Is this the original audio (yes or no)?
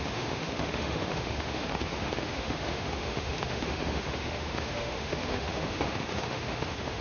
no